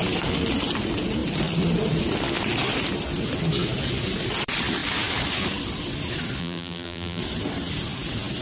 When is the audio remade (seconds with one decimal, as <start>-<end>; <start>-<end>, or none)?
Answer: 6.4-7.2